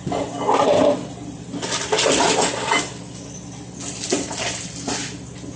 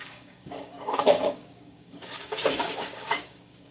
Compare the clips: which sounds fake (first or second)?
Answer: second